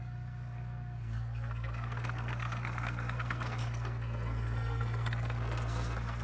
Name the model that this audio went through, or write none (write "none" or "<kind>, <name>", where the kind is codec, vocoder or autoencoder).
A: codec, SNAC